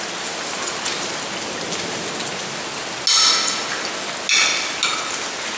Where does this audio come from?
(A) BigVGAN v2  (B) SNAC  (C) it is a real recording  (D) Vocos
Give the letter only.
C